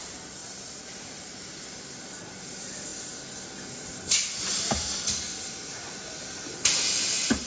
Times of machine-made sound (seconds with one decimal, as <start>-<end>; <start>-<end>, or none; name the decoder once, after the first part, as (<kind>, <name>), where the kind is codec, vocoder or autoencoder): 0.4-1.3 (vocoder, BigVGAN v2)